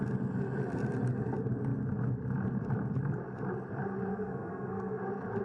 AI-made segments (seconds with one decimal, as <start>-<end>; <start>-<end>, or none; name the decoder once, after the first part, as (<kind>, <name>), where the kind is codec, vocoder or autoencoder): 4.1-5.0 (codec, SNAC)